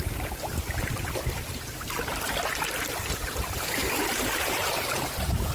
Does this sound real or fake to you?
fake